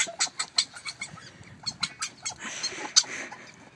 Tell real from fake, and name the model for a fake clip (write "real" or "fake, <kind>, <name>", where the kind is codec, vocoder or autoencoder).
real